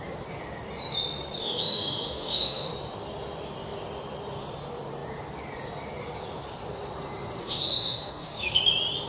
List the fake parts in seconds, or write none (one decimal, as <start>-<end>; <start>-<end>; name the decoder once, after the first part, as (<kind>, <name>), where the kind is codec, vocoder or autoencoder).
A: 1.4-2.7 (autoencoder, DAC-VAE); 7.4-8.6